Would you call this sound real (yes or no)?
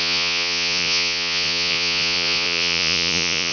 no